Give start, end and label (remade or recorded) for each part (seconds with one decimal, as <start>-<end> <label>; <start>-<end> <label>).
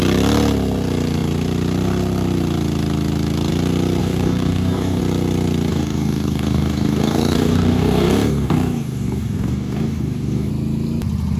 0.0-4.0 recorded; 4.0-5.0 remade; 5.0-5.7 recorded; 5.7-10.5 remade; 10.5-11.4 recorded